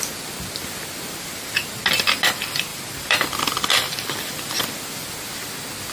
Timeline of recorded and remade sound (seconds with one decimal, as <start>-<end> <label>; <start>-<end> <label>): 0.0-2.7 recorded; 2.7-4.6 remade; 4.6-5.9 recorded